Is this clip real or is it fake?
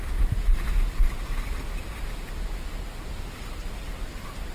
real